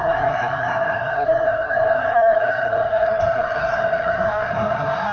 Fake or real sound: fake